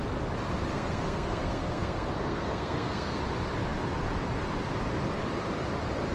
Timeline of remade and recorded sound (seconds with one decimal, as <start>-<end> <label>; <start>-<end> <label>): 0.0-0.7 recorded; 0.7-3.2 remade; 3.2-6.1 recorded